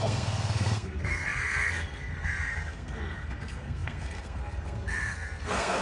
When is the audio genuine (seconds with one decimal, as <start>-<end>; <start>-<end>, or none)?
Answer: none

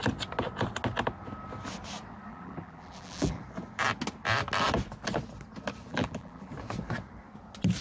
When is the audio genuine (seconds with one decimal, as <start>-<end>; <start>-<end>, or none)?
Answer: 0.0-2.3; 3.4-5.9; 6.5-7.8

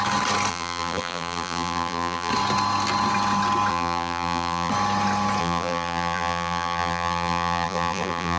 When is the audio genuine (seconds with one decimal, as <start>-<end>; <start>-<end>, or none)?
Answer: 0.0-0.5; 2.3-3.7; 4.7-5.4

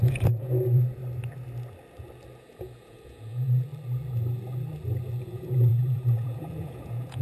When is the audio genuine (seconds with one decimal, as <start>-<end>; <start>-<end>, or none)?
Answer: 1.0-2.4; 3.7-5.2

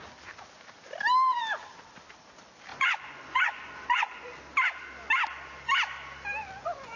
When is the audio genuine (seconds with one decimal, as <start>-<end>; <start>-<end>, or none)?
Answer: 0.0-2.7; 4.4-6.4